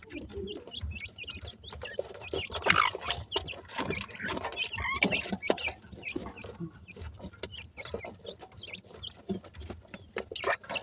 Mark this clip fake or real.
real